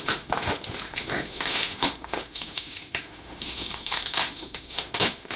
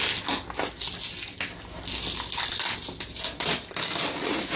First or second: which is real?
second